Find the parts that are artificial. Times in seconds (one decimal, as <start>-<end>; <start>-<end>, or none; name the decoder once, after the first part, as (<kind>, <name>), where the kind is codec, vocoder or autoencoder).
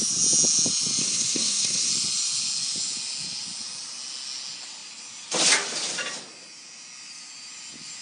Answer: 1.0-1.9 (codec, SNAC)